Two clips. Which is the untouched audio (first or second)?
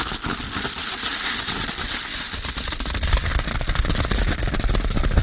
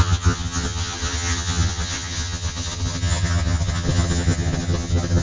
first